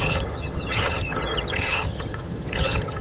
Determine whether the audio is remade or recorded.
remade